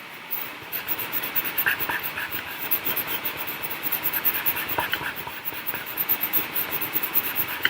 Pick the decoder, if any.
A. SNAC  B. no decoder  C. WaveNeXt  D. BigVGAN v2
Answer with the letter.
D